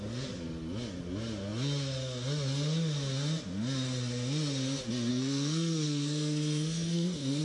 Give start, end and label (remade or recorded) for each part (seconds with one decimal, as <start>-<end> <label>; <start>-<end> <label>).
0.0-5.1 recorded; 5.1-7.4 remade